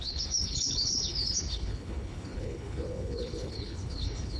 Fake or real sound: fake